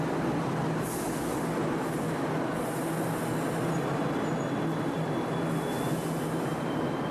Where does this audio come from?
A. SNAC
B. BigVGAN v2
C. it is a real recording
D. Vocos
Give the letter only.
C